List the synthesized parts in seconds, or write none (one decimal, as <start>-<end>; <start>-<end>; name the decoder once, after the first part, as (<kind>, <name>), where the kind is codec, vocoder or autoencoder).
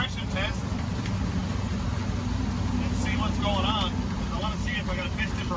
0.0-1.4 (vocoder, BigVGAN v2); 4.4-5.6